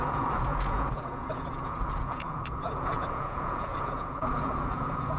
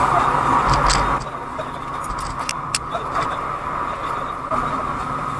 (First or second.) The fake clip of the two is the first